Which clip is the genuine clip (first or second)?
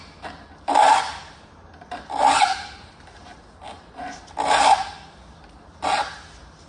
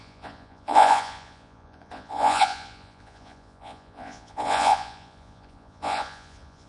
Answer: first